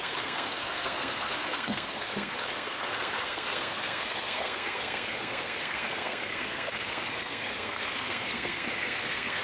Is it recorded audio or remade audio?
remade